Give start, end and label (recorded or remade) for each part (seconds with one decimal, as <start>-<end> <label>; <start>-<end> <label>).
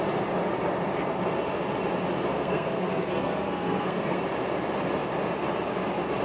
0.0-2.3 recorded; 2.3-4.2 remade; 4.2-6.2 recorded